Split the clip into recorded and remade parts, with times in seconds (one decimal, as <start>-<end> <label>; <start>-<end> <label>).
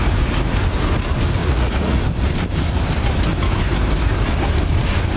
0.0-1.4 recorded; 1.4-2.0 remade; 2.0-5.2 recorded